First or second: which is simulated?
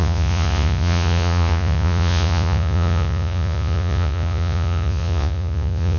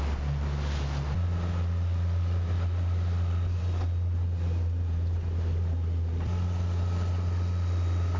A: first